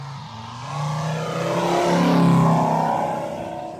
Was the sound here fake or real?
real